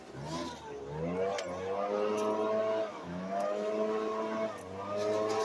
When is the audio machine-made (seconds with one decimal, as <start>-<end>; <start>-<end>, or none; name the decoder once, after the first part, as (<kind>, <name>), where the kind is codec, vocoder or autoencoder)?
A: 2.9-3.7 (autoencoder, DAC-VAE)